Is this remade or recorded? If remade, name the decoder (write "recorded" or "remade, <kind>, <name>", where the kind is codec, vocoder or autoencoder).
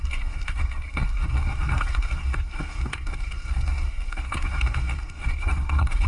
remade, codec, SNAC